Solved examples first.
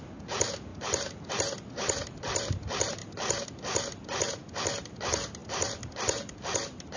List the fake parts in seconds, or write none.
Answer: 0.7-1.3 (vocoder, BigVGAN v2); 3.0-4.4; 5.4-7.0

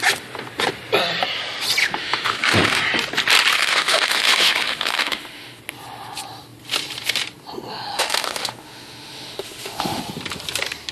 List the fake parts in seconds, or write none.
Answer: 1.8-2.8 (autoencoder, DAC-VAE); 3.5-5.6; 7.7-10.0